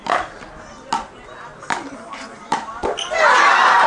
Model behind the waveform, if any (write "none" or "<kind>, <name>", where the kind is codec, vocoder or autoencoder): none